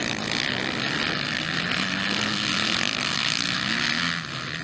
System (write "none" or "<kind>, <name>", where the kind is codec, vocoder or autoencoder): none